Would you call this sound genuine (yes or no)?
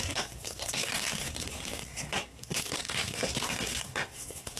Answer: no